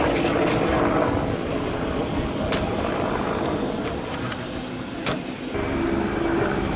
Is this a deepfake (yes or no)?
no